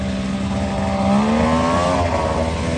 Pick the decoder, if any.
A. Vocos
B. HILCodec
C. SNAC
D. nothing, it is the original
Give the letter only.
D